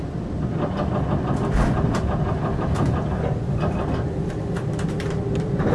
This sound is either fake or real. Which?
real